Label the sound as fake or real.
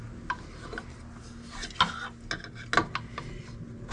real